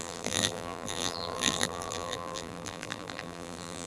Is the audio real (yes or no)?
no